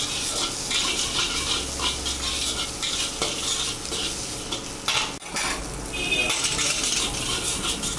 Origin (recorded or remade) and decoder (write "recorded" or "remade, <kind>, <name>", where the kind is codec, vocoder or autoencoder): recorded